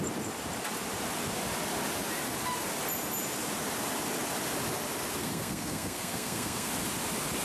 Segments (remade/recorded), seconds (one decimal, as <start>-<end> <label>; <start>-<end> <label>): 0.0-5.2 recorded; 5.2-6.7 remade; 6.7-7.4 recorded